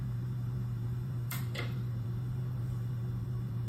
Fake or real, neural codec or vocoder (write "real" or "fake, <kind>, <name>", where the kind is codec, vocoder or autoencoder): fake, vocoder, BigVGAN v2